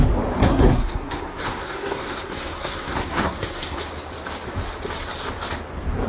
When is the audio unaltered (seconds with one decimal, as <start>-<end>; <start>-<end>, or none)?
0.0-0.4; 3.8-6.1